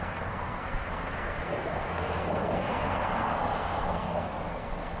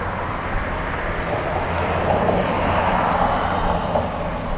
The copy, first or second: first